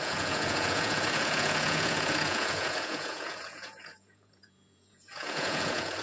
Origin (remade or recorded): remade